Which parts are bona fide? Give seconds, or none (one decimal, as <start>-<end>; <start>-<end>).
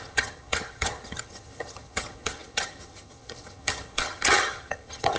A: none